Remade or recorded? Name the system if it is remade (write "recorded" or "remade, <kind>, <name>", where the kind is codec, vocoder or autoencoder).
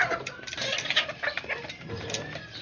recorded